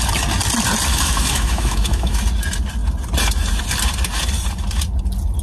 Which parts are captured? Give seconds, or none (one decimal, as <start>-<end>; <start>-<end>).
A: 0.0-0.9; 2.2-5.4

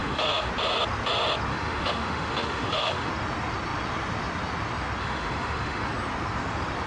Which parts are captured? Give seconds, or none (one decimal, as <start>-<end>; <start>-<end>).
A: 0.5-1.5; 3.1-5.0; 5.9-6.9

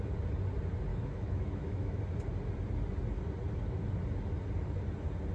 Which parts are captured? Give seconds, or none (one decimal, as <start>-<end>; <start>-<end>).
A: 0.0-0.9; 2.0-5.3

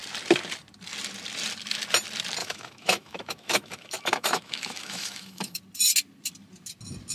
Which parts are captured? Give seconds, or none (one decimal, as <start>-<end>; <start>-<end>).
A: 0.0-2.4; 5.6-7.1

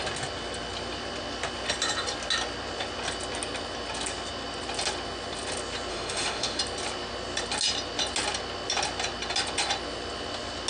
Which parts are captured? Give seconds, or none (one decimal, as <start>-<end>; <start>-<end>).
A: 0.0-5.9; 6.6-10.7

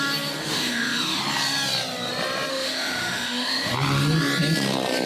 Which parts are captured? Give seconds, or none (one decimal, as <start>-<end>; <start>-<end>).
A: 0.0-0.4; 1.2-2.5; 3.7-5.1